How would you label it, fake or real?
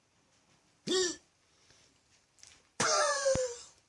fake